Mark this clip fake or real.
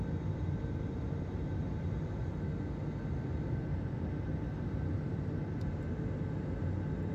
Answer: real